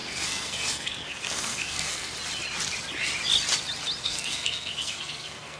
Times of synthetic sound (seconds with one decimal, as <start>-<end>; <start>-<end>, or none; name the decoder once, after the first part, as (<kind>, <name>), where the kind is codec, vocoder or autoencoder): 0.0-2.1 (codec, SNAC); 4.0-5.6